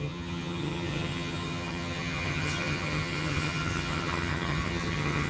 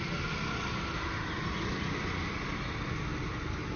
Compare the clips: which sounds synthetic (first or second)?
first